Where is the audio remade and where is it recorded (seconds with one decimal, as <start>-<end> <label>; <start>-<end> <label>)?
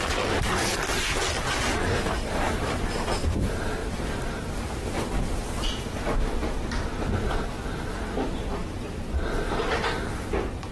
0.0-3.8 remade; 3.8-5.2 recorded; 5.2-10.7 remade